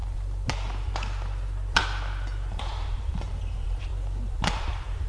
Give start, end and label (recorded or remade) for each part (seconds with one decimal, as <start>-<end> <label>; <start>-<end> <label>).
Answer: 0.0-2.5 recorded; 2.5-3.9 remade; 3.9-4.5 recorded; 4.5-5.1 remade